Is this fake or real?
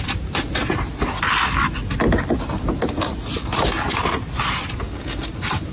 real